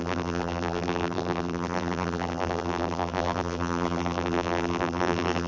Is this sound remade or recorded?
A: remade